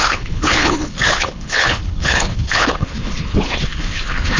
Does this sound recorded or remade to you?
remade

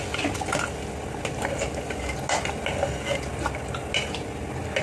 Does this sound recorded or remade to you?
recorded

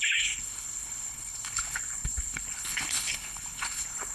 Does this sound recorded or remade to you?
remade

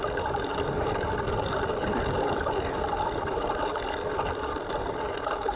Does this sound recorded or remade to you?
remade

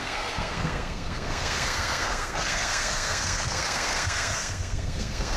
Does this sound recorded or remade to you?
remade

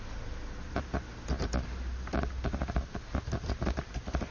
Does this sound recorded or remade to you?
recorded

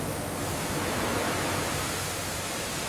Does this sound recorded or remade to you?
recorded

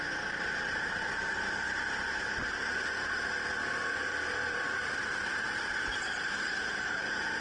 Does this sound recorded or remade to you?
recorded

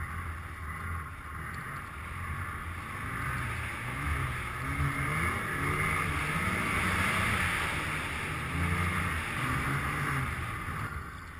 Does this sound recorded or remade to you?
recorded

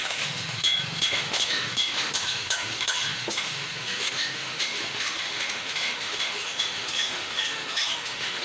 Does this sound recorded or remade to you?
remade